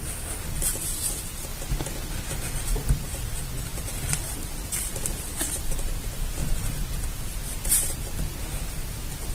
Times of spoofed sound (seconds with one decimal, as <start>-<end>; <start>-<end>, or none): 0.0-1.5; 2.9-6.4; 7.0-9.3